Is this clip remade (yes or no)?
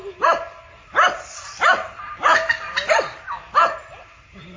no